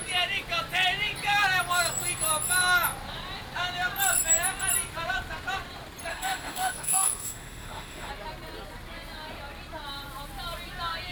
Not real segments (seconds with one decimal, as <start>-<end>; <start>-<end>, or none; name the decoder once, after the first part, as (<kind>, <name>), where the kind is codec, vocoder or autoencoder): 6.1-8.1 (autoencoder, DAC-VAE)